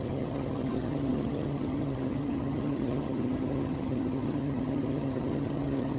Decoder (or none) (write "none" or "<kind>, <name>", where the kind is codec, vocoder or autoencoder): vocoder, HiFi-GAN